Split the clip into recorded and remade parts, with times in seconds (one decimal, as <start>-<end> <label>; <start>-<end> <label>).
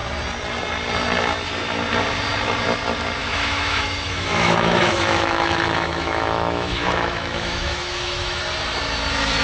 0.0-3.2 recorded; 3.2-8.4 remade; 8.4-9.4 recorded